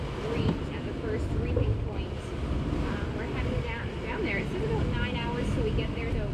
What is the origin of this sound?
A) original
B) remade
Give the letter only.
A